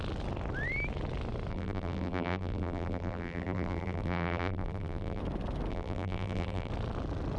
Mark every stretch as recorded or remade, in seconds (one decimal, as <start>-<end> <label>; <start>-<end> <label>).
0.0-1.5 recorded; 1.5-5.2 remade; 5.2-5.7 recorded; 5.7-6.7 remade; 6.7-7.4 recorded